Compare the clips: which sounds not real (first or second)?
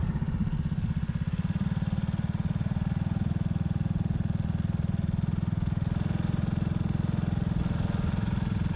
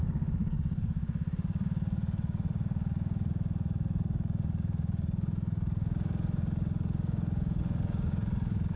second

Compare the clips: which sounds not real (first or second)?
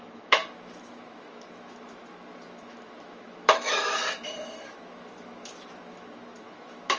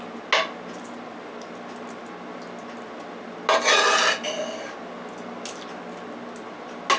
first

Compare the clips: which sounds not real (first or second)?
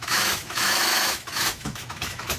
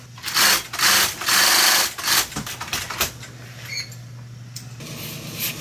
first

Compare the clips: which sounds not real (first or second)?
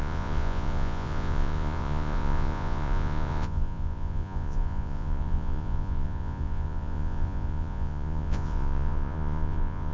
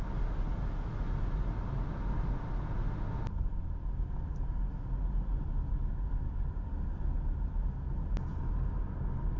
first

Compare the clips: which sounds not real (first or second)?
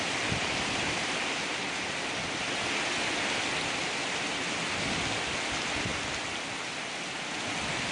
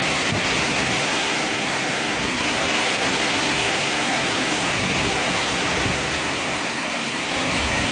second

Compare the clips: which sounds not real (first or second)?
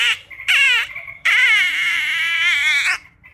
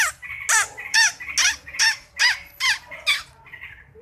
first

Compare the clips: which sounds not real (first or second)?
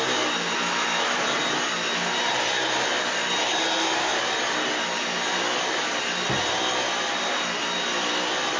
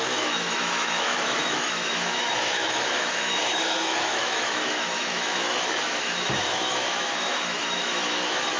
second